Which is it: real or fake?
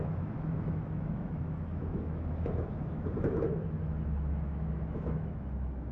fake